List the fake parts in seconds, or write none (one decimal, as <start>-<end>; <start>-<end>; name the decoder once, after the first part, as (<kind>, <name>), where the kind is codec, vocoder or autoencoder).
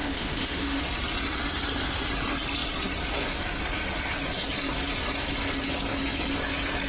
0.0-0.8 (autoencoder, DAC-VAE)